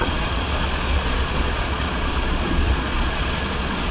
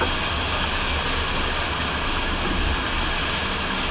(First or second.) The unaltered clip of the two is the second